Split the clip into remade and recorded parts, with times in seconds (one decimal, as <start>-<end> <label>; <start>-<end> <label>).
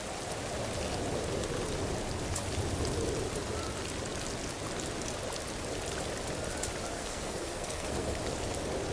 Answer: 0.0-6.9 recorded; 6.9-8.2 remade; 8.2-8.9 recorded